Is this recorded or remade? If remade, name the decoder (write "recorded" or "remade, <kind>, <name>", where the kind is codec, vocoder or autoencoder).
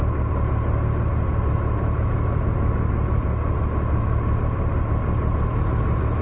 recorded